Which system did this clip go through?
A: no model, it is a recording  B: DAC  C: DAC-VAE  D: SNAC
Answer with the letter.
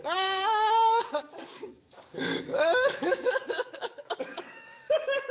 B